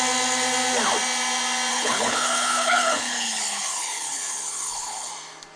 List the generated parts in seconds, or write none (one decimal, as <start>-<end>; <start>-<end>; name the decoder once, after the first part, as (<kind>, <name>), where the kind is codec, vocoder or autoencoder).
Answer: 1.7-5.1 (codec, HILCodec)